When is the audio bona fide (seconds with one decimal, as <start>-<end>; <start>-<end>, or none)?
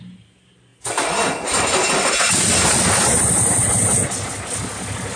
0.0-5.2